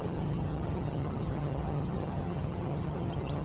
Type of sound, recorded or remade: remade